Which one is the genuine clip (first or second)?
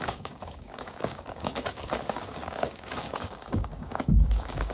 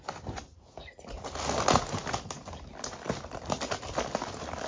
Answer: second